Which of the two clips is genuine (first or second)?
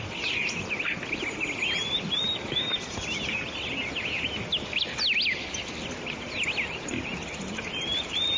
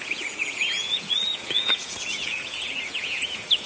first